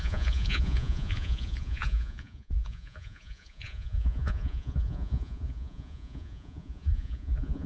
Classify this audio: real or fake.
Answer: fake